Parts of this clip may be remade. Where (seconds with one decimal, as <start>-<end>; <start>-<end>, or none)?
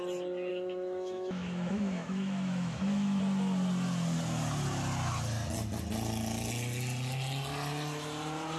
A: 0.5-3.2